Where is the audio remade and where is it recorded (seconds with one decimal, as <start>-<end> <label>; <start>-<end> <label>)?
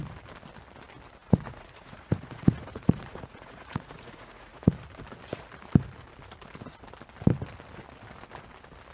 0.0-1.2 recorded; 1.2-4.7 remade; 4.7-8.9 recorded